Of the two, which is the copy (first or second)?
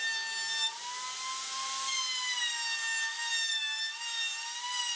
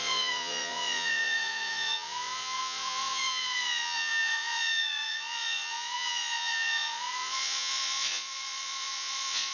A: second